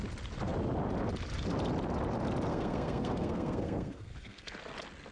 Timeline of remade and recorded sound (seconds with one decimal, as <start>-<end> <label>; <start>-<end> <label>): 0.0-2.5 recorded; 2.5-4.5 remade; 4.5-5.1 recorded